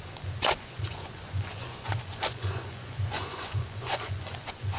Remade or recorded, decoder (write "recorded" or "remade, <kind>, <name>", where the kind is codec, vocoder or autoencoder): remade, vocoder, Vocos